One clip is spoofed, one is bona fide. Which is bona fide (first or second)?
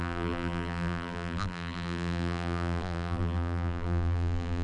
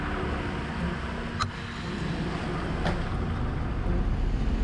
second